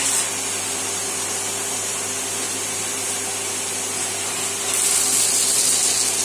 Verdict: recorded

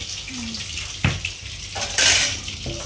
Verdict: recorded